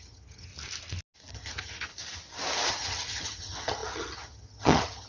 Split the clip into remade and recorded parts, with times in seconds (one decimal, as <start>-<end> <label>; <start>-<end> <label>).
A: 0.0-0.5 remade; 0.5-1.3 recorded; 1.3-1.9 remade; 1.9-2.7 recorded; 2.7-5.1 remade

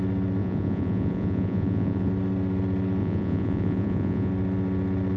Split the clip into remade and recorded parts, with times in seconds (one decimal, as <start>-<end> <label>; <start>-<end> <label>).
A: 0.0-0.4 recorded; 0.4-2.1 remade; 2.1-3.0 recorded; 3.0-4.3 remade; 4.3-5.2 recorded

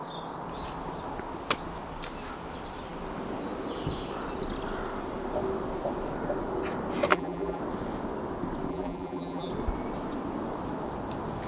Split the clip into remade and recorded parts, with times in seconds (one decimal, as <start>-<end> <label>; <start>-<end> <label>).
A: 0.0-7.1 recorded; 7.1-7.6 remade; 7.6-8.7 recorded; 8.7-9.5 remade; 9.5-11.5 recorded

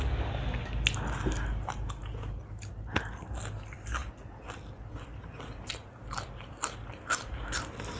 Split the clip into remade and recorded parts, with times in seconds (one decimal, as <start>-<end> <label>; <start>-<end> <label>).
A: 0.0-8.0 recorded

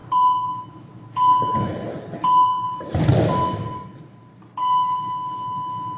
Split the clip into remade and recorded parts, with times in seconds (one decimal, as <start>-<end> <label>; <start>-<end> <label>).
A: 0.0-6.0 recorded